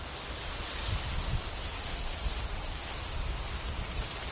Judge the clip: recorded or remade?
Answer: recorded